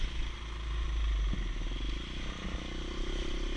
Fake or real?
real